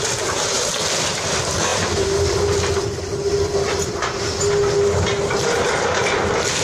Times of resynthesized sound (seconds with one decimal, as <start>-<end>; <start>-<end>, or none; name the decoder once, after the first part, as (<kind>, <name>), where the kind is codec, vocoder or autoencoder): none